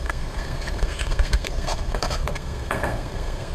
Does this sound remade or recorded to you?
remade